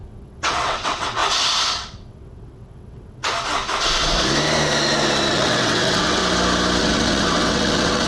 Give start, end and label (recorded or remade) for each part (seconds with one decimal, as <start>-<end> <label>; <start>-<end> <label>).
0.0-1.2 remade; 1.2-1.7 recorded; 1.7-3.2 remade; 3.2-5.3 recorded; 5.3-6.2 remade; 6.2-6.8 recorded; 6.8-8.1 remade